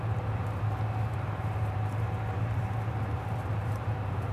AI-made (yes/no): yes